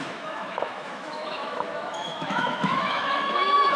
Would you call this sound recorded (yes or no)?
no